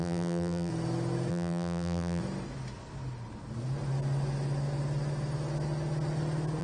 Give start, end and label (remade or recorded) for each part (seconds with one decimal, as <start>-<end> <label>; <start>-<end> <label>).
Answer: 0.0-0.7 remade; 0.7-1.3 recorded; 1.3-2.2 remade; 2.2-6.6 recorded